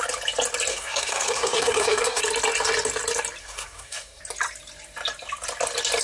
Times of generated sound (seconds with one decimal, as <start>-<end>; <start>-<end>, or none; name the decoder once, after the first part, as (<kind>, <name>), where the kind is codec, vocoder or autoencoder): 0.7-2.2 (codec, SNAC); 3.4-4.2